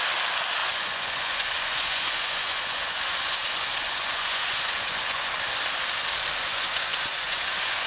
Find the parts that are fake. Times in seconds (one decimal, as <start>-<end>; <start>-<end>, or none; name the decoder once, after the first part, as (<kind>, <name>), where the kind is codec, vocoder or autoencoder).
0.6-5.3 (vocoder, Vocos); 6.4-7.9